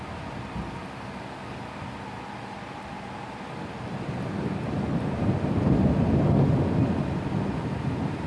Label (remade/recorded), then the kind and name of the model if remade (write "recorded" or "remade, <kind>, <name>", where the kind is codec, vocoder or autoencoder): recorded